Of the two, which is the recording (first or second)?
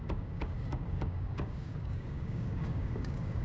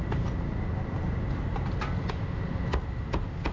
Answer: second